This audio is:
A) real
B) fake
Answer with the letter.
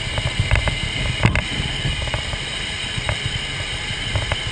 A